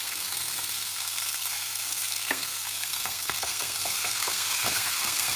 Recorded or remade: remade